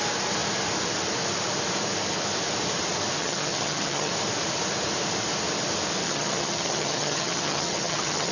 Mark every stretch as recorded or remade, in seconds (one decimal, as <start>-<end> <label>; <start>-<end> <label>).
0.0-3.2 recorded; 3.2-4.1 remade; 4.1-6.0 recorded; 6.0-8.3 remade